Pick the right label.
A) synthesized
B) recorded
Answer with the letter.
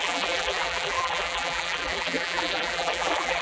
A